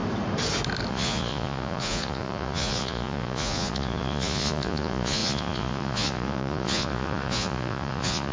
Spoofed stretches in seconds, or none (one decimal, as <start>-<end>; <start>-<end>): 0.9-8.3